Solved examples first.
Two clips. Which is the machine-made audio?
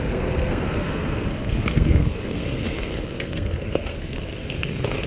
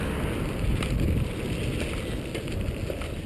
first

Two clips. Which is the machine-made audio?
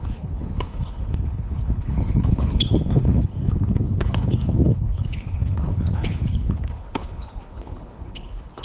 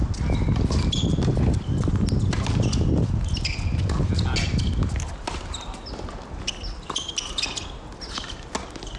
first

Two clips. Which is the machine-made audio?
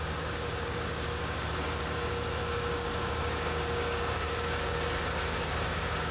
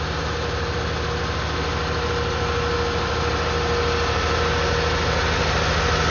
first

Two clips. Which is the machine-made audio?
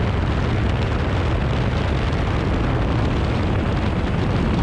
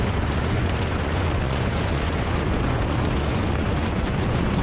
second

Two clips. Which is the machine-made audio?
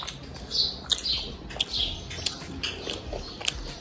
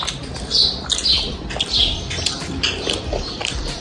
second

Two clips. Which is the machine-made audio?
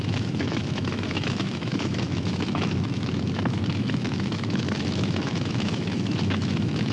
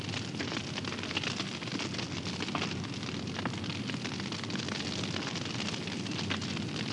first